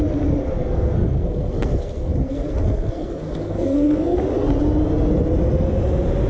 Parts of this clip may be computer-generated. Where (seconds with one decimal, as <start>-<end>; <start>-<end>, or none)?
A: 0.4-4.2

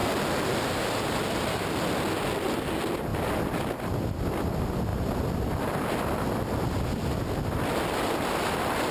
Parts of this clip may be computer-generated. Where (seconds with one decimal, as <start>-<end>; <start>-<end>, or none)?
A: none